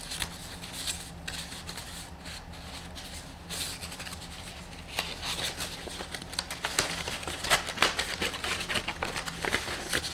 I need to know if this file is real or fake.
real